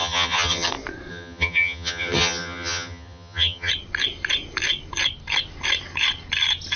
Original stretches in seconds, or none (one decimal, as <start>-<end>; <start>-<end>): 0.7-1.1; 3.7-6.8